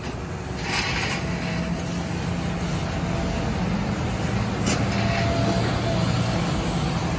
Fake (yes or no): no